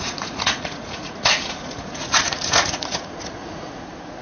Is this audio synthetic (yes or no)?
yes